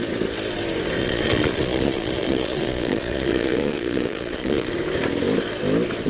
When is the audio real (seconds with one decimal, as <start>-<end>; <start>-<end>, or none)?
0.0-1.0; 4.7-6.1